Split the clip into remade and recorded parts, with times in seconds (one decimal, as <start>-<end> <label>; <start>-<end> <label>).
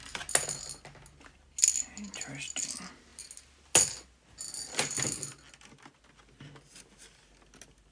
0.0-7.9 recorded